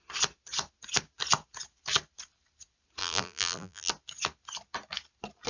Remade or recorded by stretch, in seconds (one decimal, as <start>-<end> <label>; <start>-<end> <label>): 0.0-3.0 recorded; 3.0-3.9 remade; 3.9-5.5 recorded